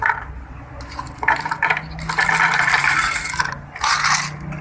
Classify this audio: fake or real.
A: real